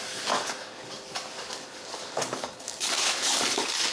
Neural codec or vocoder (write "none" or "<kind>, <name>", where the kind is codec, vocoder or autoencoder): codec, DAC